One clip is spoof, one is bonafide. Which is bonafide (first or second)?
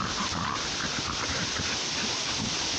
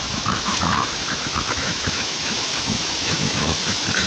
first